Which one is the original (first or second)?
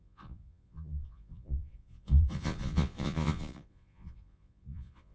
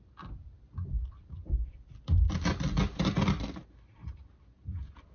second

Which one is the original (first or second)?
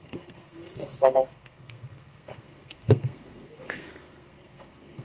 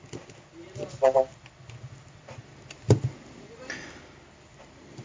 second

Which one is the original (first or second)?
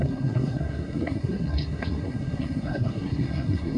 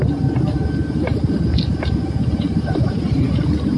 second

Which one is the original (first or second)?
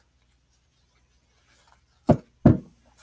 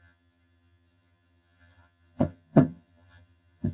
first